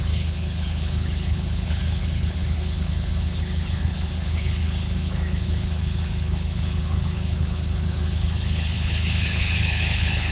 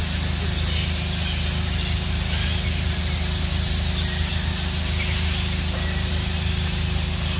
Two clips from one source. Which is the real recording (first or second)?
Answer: second